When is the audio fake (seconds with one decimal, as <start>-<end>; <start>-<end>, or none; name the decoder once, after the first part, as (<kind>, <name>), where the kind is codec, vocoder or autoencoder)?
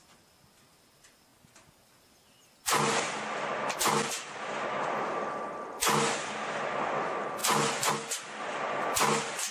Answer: none